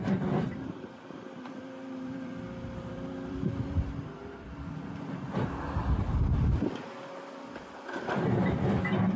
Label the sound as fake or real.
fake